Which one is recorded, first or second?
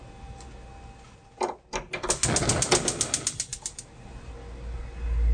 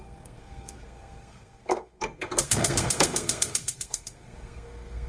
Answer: first